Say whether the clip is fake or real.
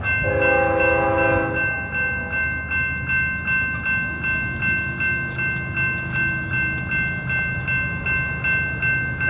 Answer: real